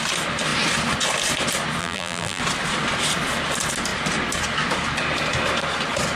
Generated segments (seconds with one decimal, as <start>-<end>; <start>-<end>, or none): 1.8-2.4